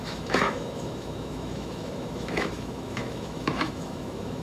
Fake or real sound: fake